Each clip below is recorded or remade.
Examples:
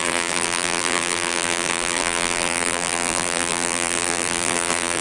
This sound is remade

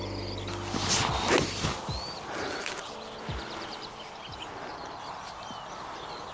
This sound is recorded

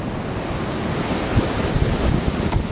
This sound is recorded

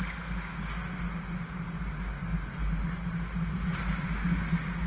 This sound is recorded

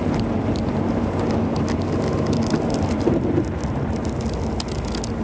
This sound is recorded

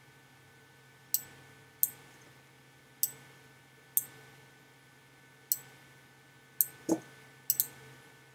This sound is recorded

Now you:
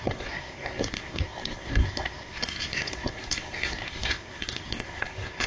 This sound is remade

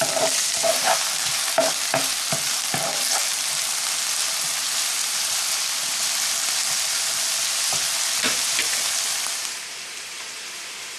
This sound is recorded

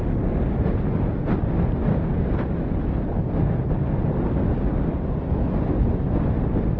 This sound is recorded